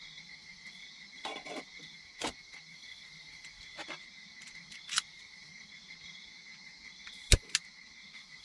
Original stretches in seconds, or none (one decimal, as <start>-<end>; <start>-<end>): 0.0-8.4

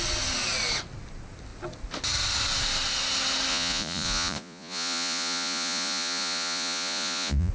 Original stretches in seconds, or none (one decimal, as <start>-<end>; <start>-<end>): 0.0-3.5

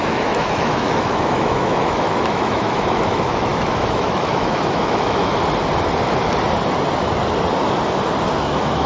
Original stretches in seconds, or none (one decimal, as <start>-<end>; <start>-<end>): 5.3-8.3

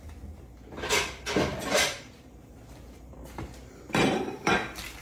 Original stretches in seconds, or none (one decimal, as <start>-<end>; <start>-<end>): 0.0-1.5; 4.5-5.0